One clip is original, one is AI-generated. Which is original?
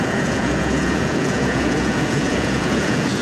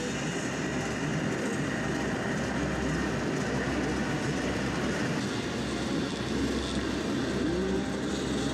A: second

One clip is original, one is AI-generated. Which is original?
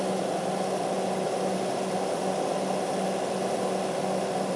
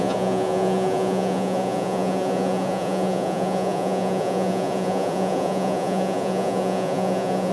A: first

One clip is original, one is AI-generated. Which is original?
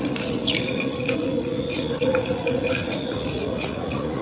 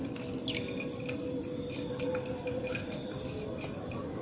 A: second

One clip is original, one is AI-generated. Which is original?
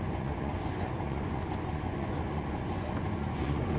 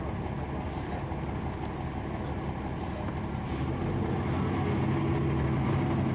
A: second